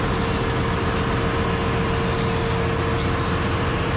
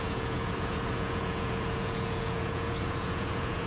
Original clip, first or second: first